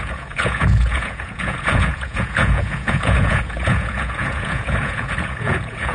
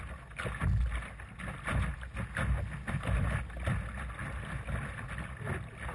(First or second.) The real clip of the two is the second